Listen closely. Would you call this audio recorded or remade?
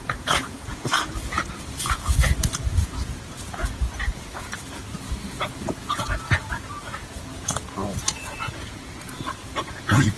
remade